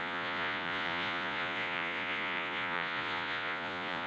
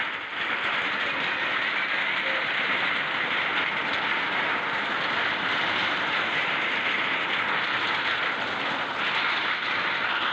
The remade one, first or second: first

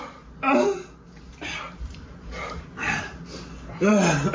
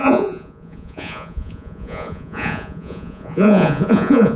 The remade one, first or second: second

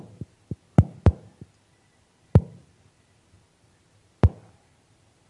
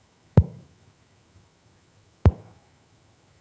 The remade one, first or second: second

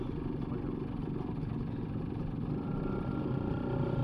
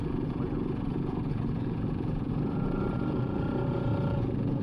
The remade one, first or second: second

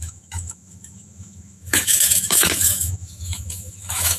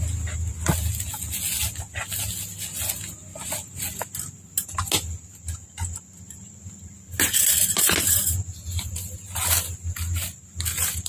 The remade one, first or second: first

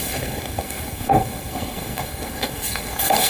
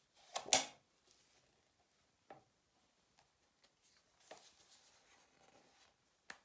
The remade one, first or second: first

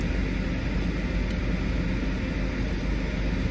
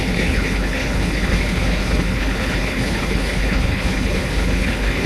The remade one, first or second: second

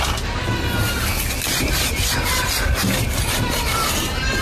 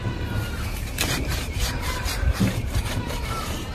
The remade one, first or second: second